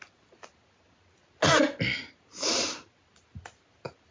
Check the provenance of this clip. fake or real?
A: real